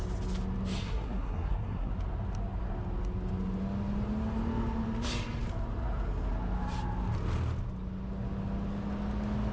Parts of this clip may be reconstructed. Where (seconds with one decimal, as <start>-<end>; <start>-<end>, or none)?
0.8-1.9